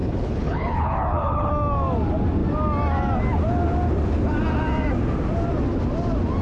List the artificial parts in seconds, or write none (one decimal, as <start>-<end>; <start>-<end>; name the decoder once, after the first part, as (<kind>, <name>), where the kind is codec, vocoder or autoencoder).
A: 0.0-1.5 (codec, HILCodec)